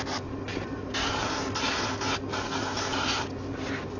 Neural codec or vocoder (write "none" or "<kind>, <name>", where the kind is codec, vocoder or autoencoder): none